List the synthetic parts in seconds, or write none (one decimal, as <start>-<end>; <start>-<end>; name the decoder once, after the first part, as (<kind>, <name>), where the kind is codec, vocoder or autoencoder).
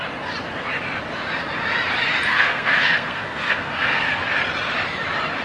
2.3-4.2 (codec, SNAC)